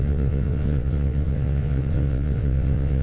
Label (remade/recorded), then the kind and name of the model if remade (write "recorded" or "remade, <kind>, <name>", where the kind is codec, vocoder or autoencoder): remade, vocoder, WaveNeXt